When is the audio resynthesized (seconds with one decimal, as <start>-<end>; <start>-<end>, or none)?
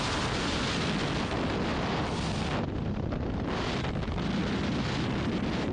none